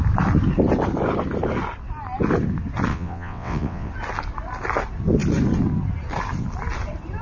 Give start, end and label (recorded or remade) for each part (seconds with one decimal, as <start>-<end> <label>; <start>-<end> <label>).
0.0-2.9 recorded; 2.9-3.9 remade; 3.9-7.2 recorded